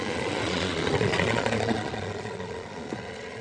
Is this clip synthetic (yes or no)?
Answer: yes